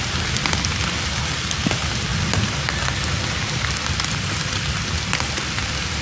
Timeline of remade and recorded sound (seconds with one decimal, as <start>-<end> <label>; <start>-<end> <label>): 0.0-6.0 recorded